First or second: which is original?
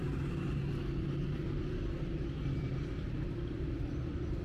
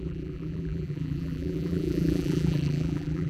first